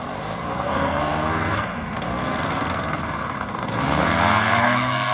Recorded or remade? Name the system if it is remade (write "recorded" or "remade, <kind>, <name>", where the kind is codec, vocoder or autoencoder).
remade, codec, SNAC